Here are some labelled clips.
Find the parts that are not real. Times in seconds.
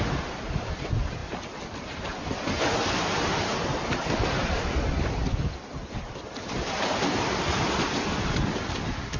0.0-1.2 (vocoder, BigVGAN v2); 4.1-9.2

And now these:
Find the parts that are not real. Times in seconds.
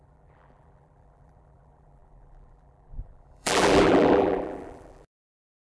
0.0-5.7 (vocoder, BigVGAN v2)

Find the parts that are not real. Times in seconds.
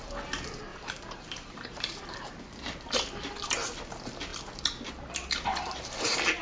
0.7-2.8 (vocoder, BigVGAN v2)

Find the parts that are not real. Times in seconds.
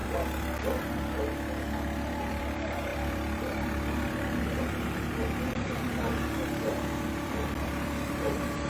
2.3-8.7 (vocoder, BigVGAN v2)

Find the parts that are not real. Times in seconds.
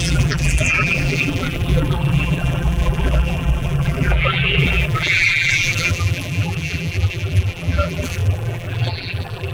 0.0-9.5 (vocoder, BigVGAN v2)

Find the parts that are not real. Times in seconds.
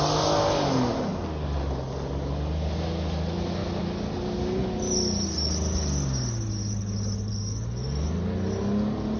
none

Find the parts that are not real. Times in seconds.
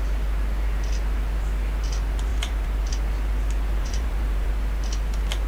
2.3-2.9 (vocoder, BigVGAN v2); 3.7-4.5